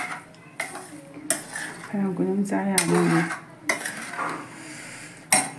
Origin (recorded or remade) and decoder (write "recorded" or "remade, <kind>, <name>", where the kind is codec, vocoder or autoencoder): recorded